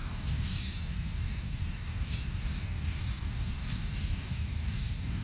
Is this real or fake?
fake